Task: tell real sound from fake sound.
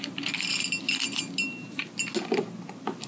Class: real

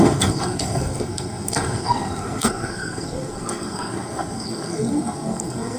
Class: fake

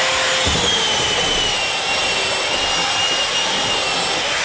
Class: real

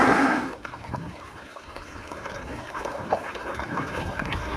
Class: fake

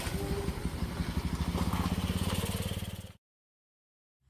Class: real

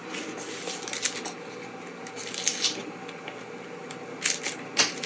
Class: real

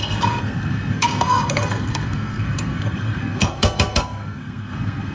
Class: fake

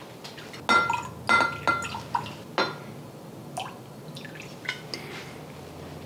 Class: real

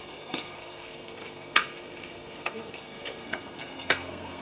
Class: fake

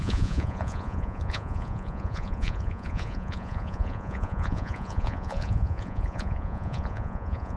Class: fake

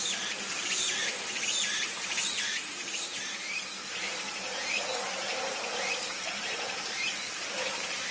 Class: fake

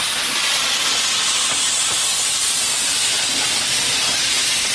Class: real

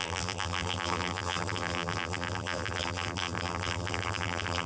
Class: fake